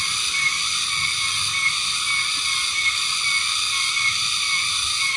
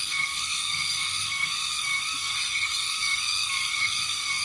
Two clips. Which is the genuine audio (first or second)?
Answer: first